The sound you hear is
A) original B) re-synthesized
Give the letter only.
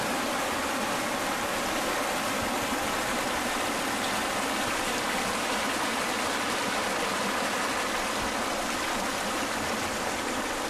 A